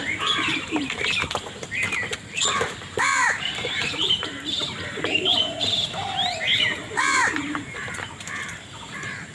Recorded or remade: remade